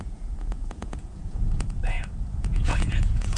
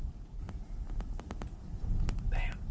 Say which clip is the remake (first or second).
first